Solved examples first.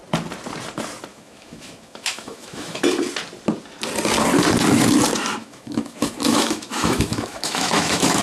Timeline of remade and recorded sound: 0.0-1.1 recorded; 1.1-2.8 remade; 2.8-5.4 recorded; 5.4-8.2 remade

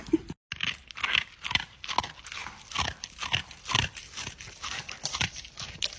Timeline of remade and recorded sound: 0.0-6.0 recorded

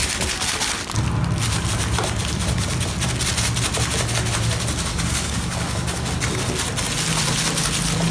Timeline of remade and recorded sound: 0.0-4.9 recorded; 4.9-6.1 remade; 6.1-8.1 recorded

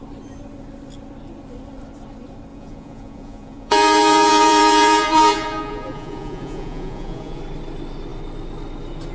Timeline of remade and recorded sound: 0.0-2.5 recorded; 2.5-7.4 remade; 7.4-9.1 recorded

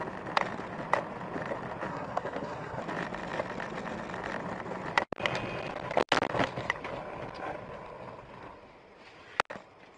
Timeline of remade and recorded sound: 0.0-1.9 recorded; 1.9-2.8 remade; 2.8-10.0 recorded

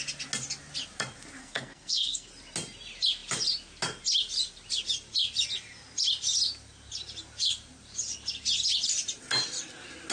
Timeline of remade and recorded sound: 0.0-1.4 recorded; 1.4-2.3 remade; 2.3-10.1 recorded